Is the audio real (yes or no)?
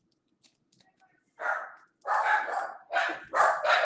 yes